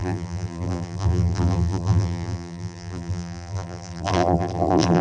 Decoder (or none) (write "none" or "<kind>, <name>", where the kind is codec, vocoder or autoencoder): vocoder, BigVGAN v2